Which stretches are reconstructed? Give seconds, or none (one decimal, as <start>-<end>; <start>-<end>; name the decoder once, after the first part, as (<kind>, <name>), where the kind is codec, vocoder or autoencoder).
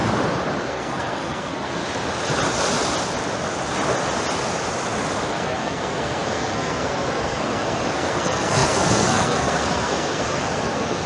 0.6-1.8 (codec, SNAC); 5.3-11.1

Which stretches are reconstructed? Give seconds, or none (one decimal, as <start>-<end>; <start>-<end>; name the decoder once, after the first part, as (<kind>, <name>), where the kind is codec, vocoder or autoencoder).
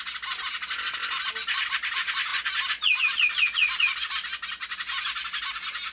none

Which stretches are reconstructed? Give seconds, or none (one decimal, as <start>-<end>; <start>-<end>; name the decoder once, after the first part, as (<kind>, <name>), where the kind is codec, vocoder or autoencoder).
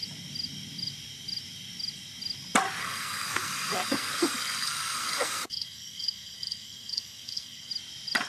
2.8-7.7 (codec, SNAC)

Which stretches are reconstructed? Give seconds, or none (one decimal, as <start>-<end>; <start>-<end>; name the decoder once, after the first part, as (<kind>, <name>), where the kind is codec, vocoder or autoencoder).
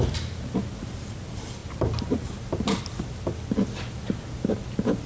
none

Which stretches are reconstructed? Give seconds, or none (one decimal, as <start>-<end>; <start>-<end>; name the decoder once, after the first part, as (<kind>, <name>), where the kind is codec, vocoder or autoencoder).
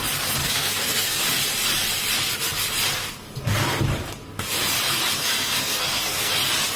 0.4-1.2 (codec, SNAC); 5.2-6.3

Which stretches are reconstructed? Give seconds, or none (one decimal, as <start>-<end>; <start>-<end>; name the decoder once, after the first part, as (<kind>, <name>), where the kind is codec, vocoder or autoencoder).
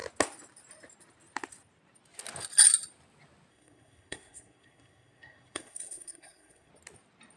3.5-6.7 (codec, SNAC)